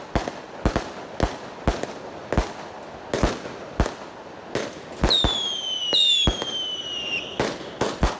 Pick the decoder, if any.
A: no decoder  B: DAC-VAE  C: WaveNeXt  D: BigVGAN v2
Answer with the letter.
A